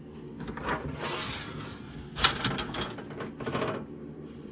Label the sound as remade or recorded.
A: recorded